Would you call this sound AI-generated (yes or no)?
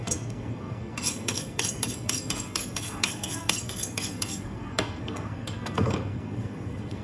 yes